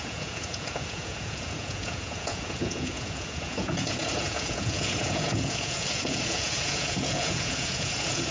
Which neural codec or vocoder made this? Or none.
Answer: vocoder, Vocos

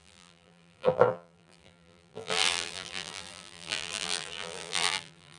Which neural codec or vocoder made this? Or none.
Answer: vocoder, BigVGAN v2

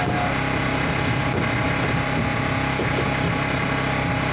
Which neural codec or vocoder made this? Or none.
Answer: none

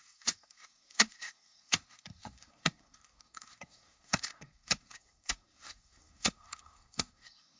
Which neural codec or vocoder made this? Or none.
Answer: codec, SNAC